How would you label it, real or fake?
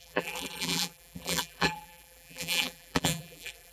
fake